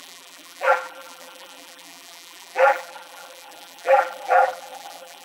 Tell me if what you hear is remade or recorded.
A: remade